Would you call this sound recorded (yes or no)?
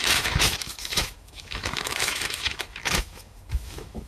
no